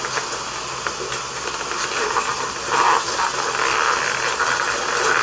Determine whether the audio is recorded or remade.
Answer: recorded